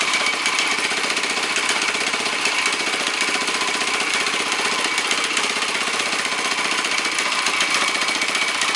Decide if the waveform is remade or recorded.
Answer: remade